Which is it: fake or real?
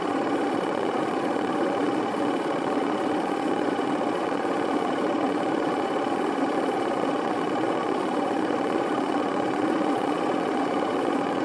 fake